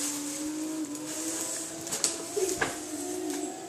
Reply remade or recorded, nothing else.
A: recorded